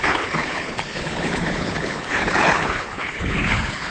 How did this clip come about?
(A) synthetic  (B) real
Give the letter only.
A